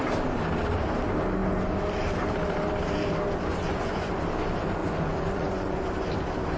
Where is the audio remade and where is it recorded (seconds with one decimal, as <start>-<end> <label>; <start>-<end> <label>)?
0.0-3.5 recorded; 3.5-4.1 remade; 4.1-4.8 recorded; 4.8-5.8 remade; 5.8-6.6 recorded